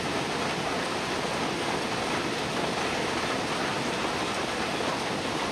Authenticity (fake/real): real